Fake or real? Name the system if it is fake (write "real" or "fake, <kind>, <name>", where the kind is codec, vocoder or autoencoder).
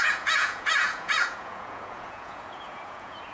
fake, vocoder, Vocos